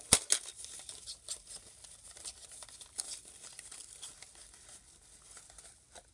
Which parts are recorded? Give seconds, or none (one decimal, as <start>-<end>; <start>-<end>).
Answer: 0.0-6.1